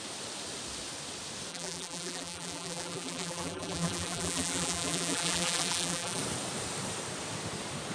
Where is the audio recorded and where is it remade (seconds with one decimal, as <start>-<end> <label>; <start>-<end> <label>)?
0.0-1.5 recorded; 1.5-6.2 remade; 6.2-7.9 recorded